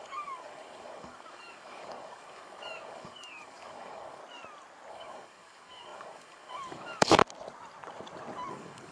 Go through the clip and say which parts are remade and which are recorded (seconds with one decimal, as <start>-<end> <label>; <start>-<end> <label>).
0.0-4.2 remade; 4.2-4.9 recorded; 4.9-7.2 remade; 7.2-8.5 recorded; 8.5-8.9 remade